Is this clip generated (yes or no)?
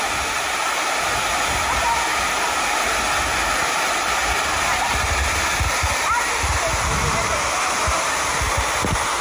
no